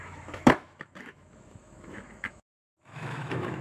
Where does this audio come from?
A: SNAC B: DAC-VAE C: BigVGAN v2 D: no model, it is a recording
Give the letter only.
B